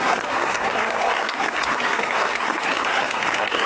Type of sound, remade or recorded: remade